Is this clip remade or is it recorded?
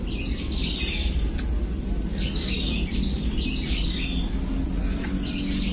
recorded